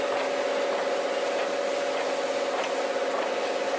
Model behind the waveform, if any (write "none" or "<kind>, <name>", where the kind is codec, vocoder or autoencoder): none